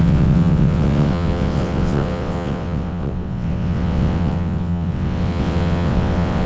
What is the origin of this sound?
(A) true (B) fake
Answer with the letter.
B